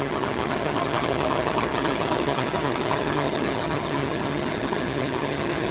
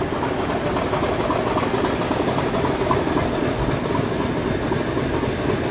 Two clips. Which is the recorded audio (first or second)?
second